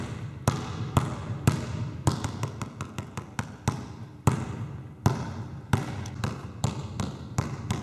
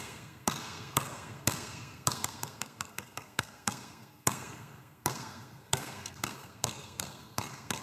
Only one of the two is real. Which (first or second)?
first